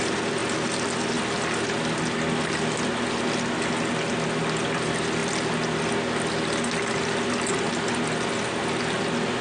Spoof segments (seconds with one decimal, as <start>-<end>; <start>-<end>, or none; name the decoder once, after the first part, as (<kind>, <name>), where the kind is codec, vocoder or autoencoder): none